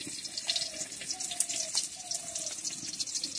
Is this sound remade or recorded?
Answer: recorded